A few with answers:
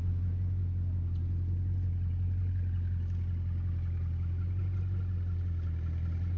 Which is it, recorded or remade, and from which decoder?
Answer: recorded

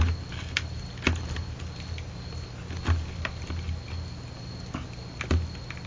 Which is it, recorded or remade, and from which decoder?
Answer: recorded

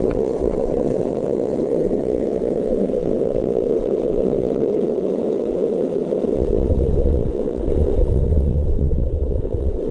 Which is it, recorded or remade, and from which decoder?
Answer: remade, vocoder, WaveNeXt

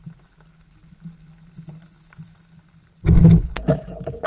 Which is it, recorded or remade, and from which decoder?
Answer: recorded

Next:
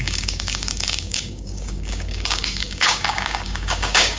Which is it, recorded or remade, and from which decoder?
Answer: remade, codec, DAC